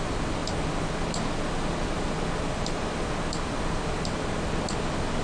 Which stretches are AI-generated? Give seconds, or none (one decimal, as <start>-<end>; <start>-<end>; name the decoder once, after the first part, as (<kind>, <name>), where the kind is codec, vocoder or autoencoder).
none